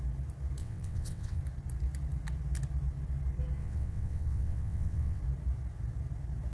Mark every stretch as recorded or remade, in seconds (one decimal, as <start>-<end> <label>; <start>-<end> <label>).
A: 0.0-0.6 recorded; 0.6-1.4 remade; 1.4-3.6 recorded; 3.6-5.2 remade; 5.2-6.5 recorded